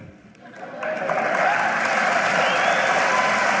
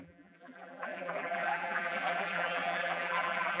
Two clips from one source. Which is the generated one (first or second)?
second